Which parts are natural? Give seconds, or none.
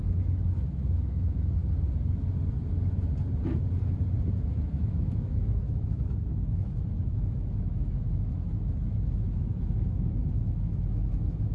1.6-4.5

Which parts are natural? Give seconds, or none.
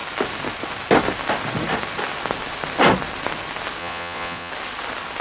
0.0-3.8; 4.5-5.2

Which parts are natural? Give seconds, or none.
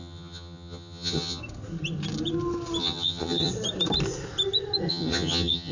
1.4-2.8; 3.5-4.9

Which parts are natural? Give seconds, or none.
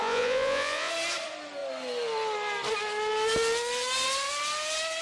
0.9-5.0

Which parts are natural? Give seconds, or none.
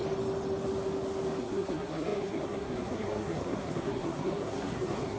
0.0-1.4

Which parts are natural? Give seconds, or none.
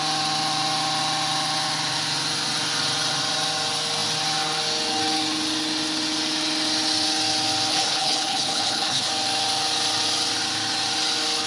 0.0-7.7; 9.1-11.5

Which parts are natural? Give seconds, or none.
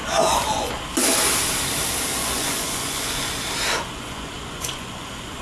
0.7-2.1; 3.3-3.7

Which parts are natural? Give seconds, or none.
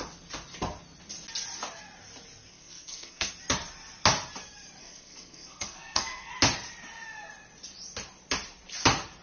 0.0-2.5; 3.3-4.8; 6.3-9.2